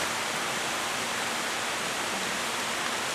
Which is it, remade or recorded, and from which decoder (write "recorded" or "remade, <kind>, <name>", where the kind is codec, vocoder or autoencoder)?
remade, vocoder, BigVGAN v2